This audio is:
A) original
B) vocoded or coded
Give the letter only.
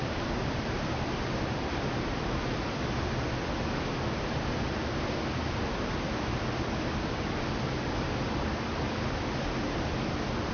A